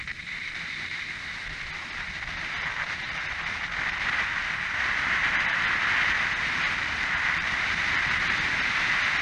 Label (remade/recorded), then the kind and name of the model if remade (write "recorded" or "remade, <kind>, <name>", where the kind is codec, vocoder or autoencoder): recorded